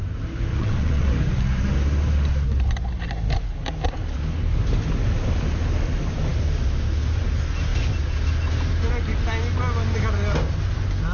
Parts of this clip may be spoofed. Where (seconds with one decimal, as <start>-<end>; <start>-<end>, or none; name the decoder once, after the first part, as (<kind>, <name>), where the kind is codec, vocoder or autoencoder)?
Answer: 0.5-1.1 (vocoder, WaveNeXt)